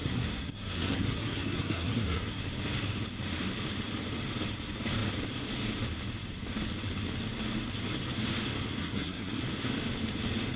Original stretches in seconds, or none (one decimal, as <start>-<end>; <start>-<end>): 2.4-8.8; 9.4-10.6